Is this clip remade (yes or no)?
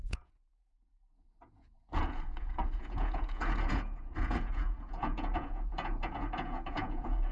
yes